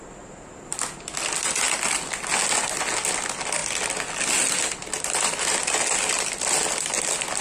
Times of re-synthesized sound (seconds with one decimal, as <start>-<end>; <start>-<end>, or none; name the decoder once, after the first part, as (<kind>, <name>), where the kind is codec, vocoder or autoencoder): none